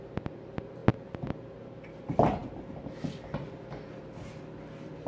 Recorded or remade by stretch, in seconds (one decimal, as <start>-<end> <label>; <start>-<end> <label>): 0.0-5.1 recorded